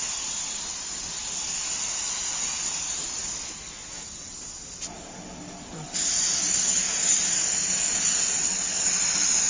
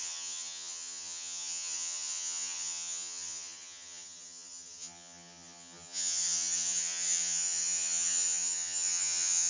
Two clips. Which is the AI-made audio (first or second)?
second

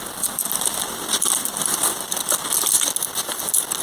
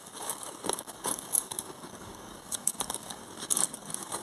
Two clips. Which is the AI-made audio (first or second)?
second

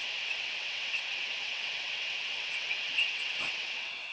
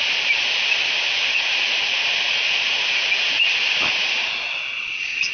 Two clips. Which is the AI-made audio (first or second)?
first